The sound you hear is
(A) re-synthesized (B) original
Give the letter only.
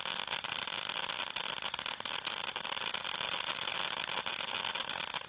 B